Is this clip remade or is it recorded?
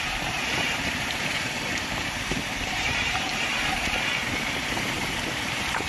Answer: remade